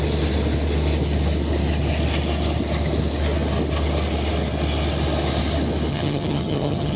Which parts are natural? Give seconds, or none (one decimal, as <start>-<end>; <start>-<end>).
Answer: 0.0-5.9